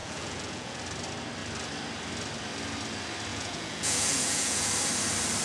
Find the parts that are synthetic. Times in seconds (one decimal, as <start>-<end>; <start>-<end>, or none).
0.0-0.8; 3.3-4.7